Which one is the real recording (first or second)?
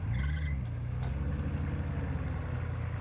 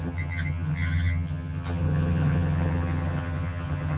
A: first